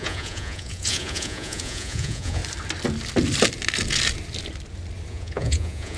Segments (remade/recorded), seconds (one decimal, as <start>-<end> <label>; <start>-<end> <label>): 0.0-2.4 remade; 2.4-5.1 recorded; 5.1-6.0 remade